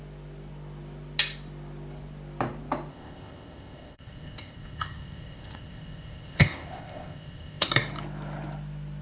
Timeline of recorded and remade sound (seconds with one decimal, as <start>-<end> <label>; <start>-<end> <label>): 0.0-2.9 recorded; 2.9-7.7 remade; 7.7-9.0 recorded

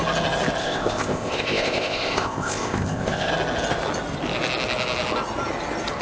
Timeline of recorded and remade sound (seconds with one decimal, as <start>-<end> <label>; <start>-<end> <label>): 0.0-0.6 recorded; 0.6-3.3 remade; 3.3-6.0 recorded

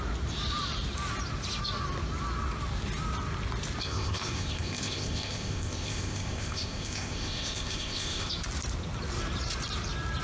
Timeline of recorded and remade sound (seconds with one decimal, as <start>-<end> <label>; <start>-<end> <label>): 0.0-3.8 recorded; 3.8-8.3 remade; 8.3-10.2 recorded

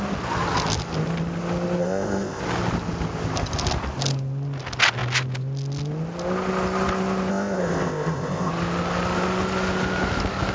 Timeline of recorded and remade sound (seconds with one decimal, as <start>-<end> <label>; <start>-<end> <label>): 0.0-1.8 recorded; 1.8-2.4 remade; 2.4-7.3 recorded; 7.3-8.5 remade; 8.5-10.5 recorded

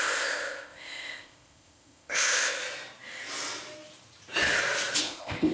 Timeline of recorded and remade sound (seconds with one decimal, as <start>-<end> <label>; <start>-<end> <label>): 0.0-2.6 remade; 2.6-5.0 recorded; 5.0-5.5 remade

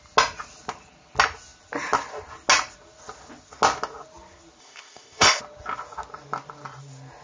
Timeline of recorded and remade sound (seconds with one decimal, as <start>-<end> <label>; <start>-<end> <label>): 0.0-4.6 recorded; 4.6-5.4 remade; 5.4-7.2 recorded